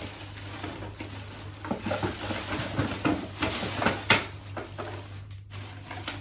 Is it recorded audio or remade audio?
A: recorded